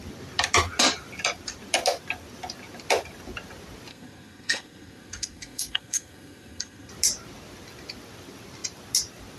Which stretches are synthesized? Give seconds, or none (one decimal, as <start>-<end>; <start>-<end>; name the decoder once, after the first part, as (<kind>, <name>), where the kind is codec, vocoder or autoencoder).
3.9-6.9 (codec, SNAC)